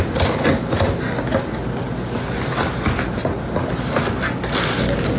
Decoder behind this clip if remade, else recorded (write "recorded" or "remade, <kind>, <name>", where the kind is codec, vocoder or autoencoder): recorded